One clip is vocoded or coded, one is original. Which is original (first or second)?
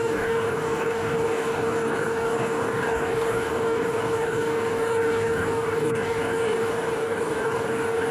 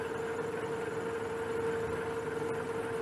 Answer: second